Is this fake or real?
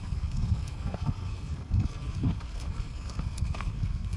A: fake